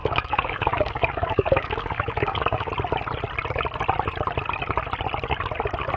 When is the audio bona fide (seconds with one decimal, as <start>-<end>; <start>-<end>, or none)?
2.7-6.0